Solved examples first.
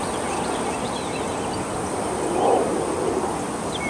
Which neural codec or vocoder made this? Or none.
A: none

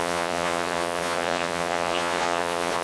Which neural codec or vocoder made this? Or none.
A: vocoder, Vocos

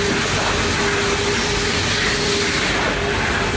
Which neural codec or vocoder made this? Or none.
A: none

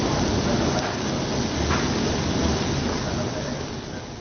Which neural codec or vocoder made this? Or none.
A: none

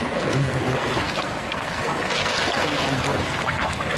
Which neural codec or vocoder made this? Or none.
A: codec, SNAC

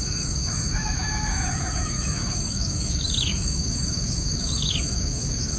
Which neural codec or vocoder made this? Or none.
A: autoencoder, DAC-VAE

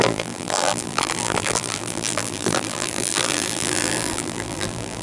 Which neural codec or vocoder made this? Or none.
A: vocoder, BigVGAN v2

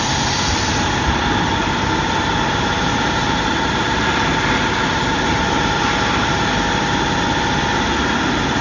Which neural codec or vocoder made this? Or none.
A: none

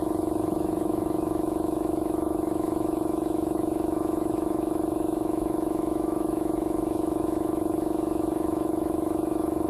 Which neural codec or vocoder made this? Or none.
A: autoencoder, DAC-VAE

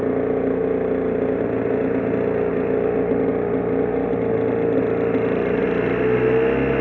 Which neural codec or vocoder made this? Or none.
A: none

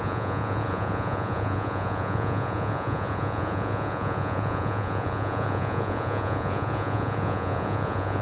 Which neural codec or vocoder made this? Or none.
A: vocoder, Vocos